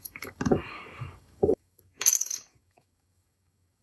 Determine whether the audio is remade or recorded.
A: remade